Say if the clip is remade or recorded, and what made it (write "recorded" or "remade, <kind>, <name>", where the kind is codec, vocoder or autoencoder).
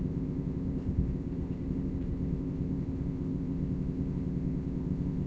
remade, codec, ZipCodec